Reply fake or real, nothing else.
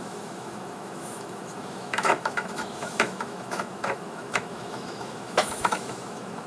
fake